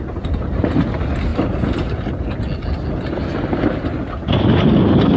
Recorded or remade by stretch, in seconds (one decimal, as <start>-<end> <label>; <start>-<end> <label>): 0.0-5.2 recorded